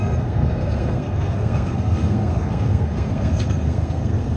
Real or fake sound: fake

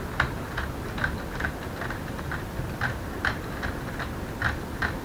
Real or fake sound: real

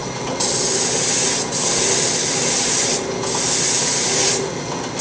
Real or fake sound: real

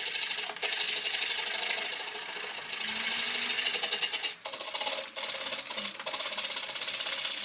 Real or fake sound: real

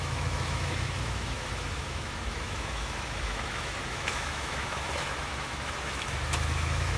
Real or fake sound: fake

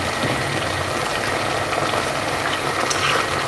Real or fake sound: real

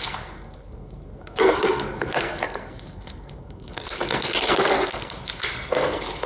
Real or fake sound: fake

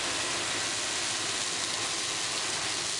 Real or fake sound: real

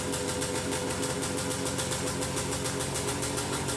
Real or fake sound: real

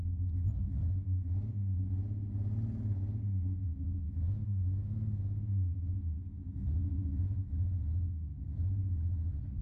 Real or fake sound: fake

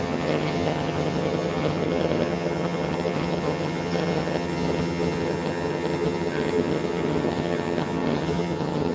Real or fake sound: fake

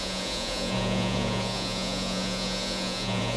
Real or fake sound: fake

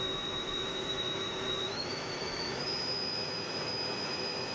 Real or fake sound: fake